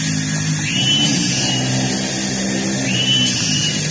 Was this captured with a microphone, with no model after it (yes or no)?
yes